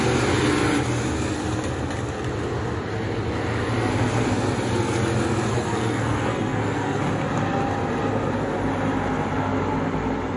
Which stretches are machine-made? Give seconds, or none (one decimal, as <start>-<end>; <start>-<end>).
5.5-7.0